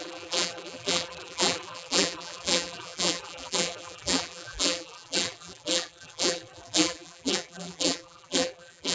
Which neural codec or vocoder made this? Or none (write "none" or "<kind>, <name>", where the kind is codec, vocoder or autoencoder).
vocoder, BigVGAN v2